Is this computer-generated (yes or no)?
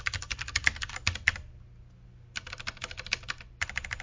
no